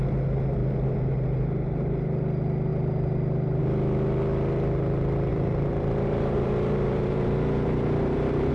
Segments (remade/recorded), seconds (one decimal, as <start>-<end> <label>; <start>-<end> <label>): 0.0-5.3 recorded; 5.3-8.5 remade

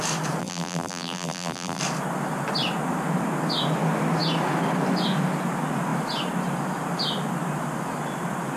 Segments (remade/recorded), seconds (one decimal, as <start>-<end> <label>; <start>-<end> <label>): 0.0-0.4 recorded; 0.4-1.8 remade; 1.8-8.6 recorded

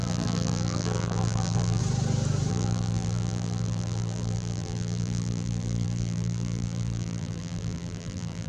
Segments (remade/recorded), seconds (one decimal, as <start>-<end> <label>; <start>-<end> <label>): 0.0-1.8 remade; 1.8-2.5 recorded; 2.5-8.5 remade